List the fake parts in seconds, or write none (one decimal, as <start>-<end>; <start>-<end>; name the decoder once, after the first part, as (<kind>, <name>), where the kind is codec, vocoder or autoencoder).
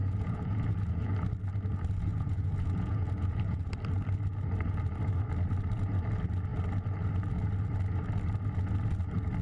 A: 0.0-1.1 (vocoder, Vocos); 2.1-3.7